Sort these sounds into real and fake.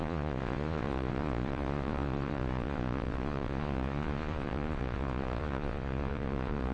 fake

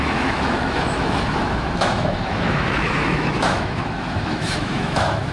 fake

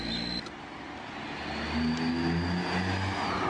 real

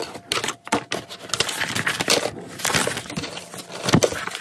real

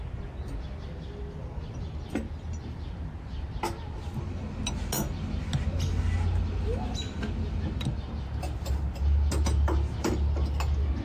real